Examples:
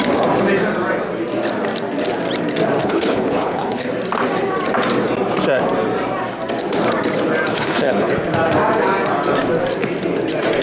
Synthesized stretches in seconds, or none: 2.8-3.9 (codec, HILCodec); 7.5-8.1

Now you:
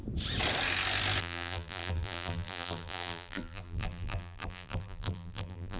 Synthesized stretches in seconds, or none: 1.2-5.8 (vocoder, BigVGAN v2)

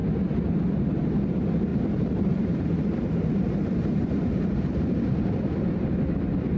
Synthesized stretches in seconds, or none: 1.7-5.7 (vocoder, BigVGAN v2)

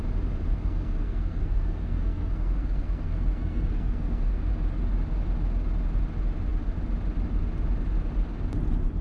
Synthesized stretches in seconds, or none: 0.5-4.5 (codec, SNAC)